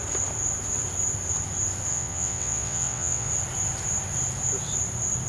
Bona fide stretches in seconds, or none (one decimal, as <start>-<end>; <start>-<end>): 0.0-1.9; 3.3-5.3